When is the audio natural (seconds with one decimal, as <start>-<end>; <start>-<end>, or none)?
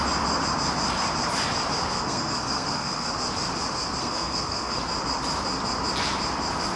0.0-1.8; 3.1-4.0; 4.8-6.8